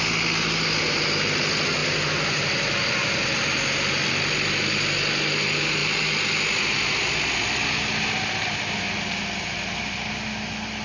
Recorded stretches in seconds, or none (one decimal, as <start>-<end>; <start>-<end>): 0.0-10.8